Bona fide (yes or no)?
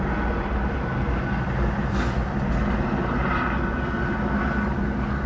yes